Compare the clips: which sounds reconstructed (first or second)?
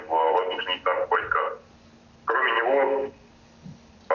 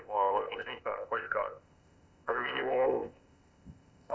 second